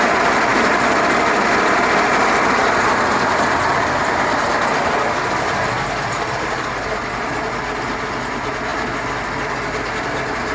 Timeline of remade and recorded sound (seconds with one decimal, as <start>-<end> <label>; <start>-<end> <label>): 0.0-10.5 recorded